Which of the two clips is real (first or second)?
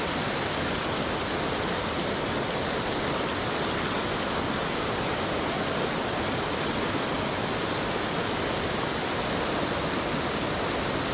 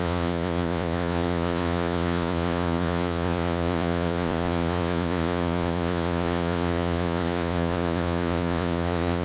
first